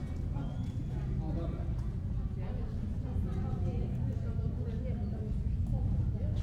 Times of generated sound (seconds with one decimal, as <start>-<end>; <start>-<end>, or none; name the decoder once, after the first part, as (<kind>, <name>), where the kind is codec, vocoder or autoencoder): 0.0-2.5 (vocoder, Vocos); 5.7-6.4